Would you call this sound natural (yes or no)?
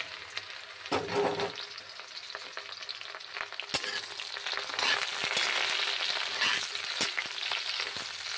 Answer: yes